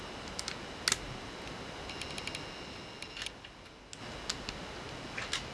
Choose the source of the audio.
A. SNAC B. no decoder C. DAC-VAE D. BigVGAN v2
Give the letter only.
B